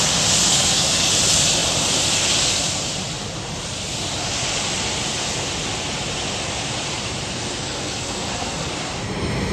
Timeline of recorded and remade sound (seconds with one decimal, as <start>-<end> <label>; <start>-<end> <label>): 0.0-0.4 recorded; 0.4-1.1 remade; 1.1-7.6 recorded; 7.6-8.7 remade; 8.7-9.5 recorded